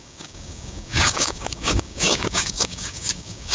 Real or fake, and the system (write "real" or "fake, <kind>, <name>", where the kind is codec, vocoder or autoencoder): fake, codec, DAC